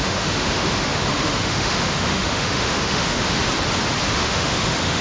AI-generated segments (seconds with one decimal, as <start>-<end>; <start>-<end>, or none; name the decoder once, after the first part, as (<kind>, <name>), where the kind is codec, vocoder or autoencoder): 0.0-3.4 (autoencoder, DAC-VAE); 4.1-5.0